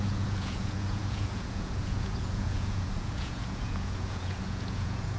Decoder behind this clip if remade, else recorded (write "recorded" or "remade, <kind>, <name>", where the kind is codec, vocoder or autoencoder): remade, vocoder, Vocos